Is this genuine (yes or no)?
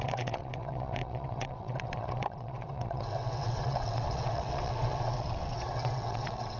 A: no